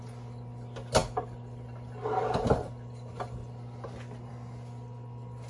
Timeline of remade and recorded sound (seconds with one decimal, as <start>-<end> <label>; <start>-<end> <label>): 0.0-5.5 recorded